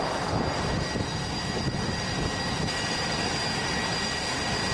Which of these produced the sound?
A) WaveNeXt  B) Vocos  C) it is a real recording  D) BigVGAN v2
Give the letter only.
C